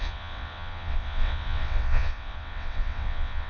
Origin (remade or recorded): remade